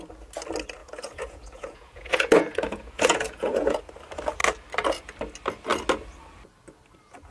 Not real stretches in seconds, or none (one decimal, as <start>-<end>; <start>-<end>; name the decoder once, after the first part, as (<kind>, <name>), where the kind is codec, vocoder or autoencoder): 0.8-3.8 (vocoder, Vocos)